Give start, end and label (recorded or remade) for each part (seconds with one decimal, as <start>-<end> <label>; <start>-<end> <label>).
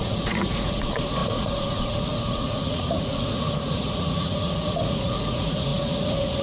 0.0-6.4 remade